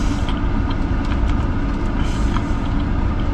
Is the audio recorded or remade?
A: recorded